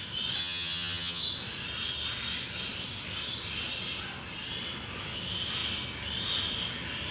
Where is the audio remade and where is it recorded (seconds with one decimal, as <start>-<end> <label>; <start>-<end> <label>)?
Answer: 0.0-0.4 recorded; 0.4-1.2 remade; 1.2-7.1 recorded